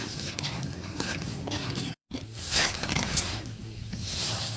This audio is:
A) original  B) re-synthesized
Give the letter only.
B